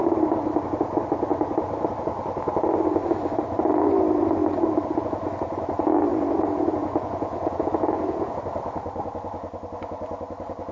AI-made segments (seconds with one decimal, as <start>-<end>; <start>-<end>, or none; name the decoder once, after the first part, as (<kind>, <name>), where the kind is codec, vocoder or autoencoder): 6.1-8.4 (vocoder, Vocos)